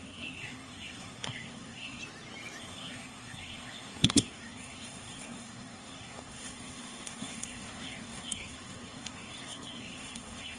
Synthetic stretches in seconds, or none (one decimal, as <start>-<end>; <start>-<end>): 0.0-2.0; 2.6-10.6